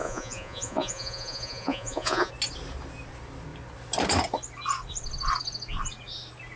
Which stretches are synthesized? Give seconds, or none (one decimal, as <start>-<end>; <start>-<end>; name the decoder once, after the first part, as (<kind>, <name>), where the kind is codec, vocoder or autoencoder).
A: 0.0-2.3 (vocoder, Vocos)

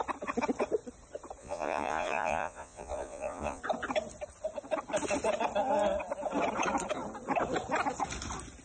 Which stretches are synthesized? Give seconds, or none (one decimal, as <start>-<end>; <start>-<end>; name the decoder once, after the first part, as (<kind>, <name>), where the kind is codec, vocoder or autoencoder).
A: 1.4-3.6 (vocoder, Vocos)

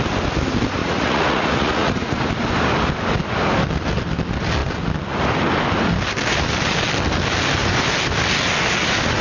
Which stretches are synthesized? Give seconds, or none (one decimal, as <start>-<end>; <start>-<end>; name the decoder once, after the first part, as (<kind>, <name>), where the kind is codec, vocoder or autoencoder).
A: 0.8-2.2 (vocoder, Vocos)

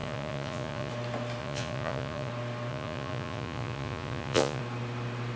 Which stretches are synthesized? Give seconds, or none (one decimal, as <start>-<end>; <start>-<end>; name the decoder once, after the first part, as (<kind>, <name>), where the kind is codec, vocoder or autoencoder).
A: 0.0-0.9 (vocoder, Vocos); 1.4-2.3; 2.7-4.6

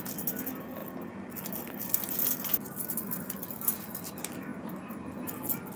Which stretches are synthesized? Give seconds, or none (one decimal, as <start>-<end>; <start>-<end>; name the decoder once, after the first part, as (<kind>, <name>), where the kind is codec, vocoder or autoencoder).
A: none

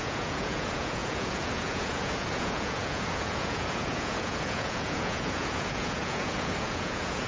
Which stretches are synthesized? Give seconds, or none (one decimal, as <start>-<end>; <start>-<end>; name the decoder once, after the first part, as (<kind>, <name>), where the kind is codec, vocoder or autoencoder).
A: 0.0-7.3 (vocoder, Vocos)

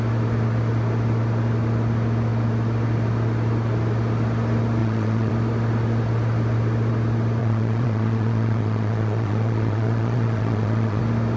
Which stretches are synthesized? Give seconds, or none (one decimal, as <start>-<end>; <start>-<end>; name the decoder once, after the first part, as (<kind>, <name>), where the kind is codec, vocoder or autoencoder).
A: 4.8-5.3 (vocoder, Vocos); 7.4-11.0